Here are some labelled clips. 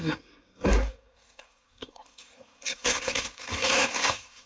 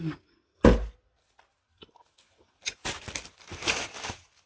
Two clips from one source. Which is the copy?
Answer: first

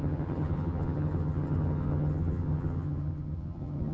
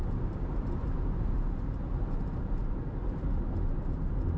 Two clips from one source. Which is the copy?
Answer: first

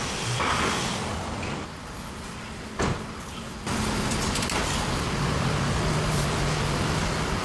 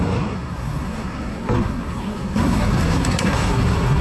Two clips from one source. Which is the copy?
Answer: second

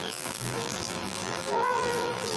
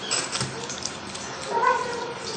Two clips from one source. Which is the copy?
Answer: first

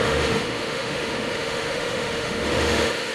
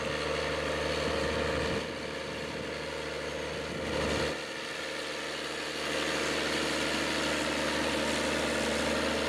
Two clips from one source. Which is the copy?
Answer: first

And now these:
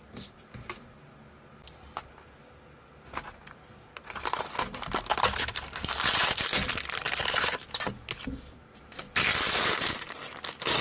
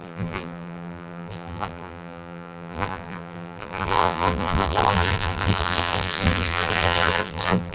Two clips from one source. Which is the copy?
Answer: second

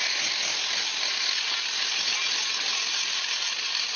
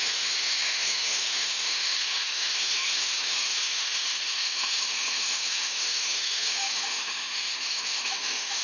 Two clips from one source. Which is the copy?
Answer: second